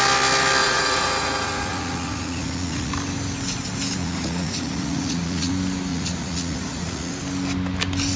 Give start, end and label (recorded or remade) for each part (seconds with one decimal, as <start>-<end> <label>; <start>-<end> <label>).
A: 0.0-0.6 recorded; 0.6-2.9 remade; 2.9-4.0 recorded; 4.0-5.5 remade; 5.5-5.9 recorded; 5.9-7.1 remade; 7.1-8.2 recorded